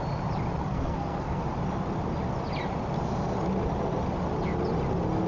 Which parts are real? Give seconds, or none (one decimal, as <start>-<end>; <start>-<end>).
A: 0.0-0.6; 1.4-5.3